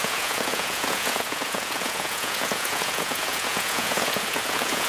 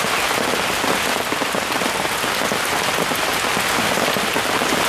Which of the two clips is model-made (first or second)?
first